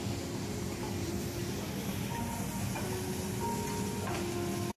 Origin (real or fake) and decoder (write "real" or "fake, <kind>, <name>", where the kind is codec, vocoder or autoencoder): real